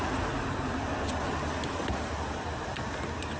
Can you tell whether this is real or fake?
real